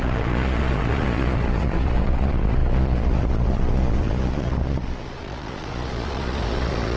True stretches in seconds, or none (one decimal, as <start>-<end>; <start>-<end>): none